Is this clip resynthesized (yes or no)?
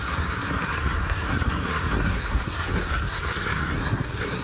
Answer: yes